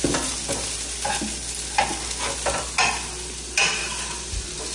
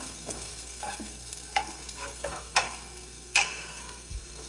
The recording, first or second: first